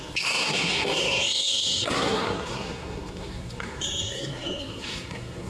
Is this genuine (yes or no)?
no